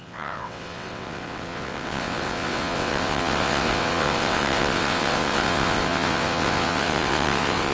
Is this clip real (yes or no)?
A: no